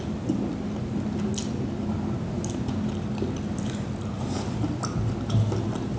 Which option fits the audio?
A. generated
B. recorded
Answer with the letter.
B